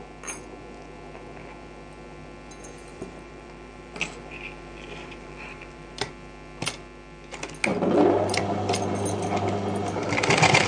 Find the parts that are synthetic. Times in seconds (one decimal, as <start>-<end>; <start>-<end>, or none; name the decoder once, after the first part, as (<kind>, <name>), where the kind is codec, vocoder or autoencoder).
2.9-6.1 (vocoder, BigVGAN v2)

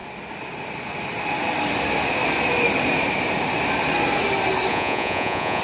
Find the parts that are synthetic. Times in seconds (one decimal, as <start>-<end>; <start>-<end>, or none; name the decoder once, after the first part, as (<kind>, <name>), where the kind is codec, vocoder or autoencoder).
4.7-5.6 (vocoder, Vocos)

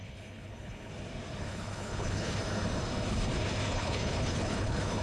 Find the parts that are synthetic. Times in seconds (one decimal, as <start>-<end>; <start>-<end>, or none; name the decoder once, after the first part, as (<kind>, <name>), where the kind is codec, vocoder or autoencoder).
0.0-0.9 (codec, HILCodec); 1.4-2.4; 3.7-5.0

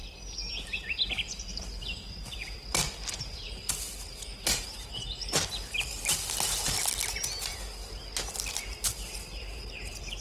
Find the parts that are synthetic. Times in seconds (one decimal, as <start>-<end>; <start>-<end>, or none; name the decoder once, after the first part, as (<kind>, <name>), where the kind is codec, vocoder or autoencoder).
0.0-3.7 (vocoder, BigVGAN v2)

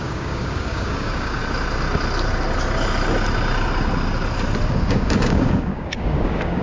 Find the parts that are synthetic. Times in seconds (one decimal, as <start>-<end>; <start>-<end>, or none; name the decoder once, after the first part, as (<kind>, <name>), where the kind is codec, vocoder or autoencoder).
0.0-1.4 (codec, DAC); 4.7-6.6

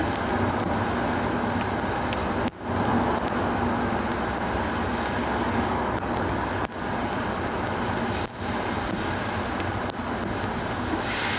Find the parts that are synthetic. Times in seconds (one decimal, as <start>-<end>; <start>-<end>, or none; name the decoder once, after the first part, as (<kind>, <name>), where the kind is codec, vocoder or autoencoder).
5.2-6.7 (codec, DAC)